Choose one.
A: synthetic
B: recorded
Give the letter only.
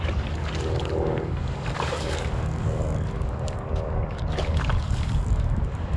A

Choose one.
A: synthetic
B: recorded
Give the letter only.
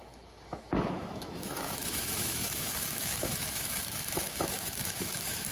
A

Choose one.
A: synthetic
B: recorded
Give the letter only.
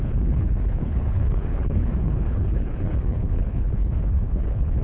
A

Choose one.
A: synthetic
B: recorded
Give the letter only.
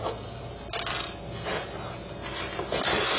B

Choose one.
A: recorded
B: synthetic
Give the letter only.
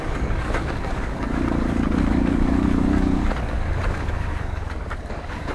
B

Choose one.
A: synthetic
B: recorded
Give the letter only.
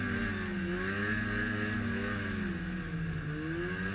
B